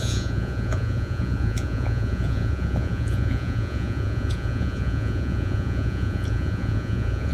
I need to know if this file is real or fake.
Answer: fake